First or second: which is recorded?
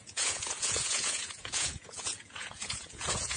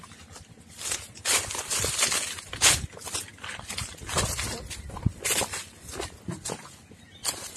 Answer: second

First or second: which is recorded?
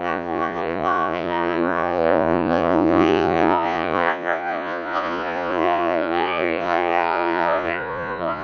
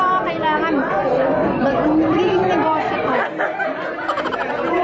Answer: second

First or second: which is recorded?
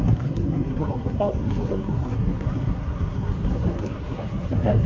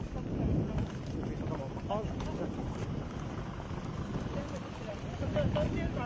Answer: second